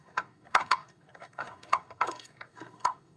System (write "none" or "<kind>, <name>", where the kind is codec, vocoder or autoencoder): codec, SNAC